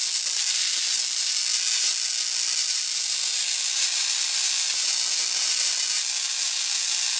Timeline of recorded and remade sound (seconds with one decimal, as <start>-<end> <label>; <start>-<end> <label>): 0.0-7.2 recorded